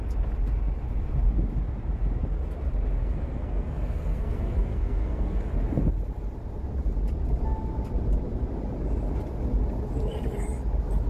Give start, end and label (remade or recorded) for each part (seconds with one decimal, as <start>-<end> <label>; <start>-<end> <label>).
0.0-3.0 recorded; 3.0-5.5 remade; 5.5-11.1 recorded